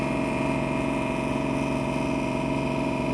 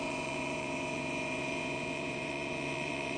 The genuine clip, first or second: first